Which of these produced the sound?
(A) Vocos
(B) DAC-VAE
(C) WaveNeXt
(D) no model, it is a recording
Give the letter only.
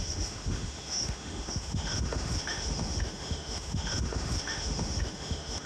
B